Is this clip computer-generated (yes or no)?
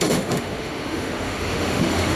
yes